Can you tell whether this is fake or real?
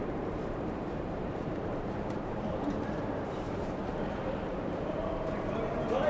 fake